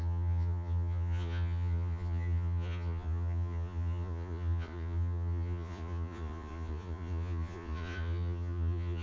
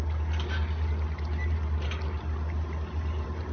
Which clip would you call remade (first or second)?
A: first